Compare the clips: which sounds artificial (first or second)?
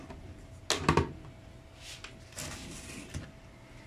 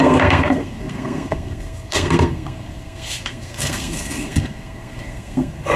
second